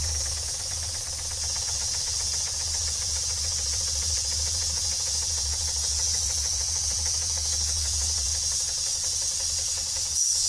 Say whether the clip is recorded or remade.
remade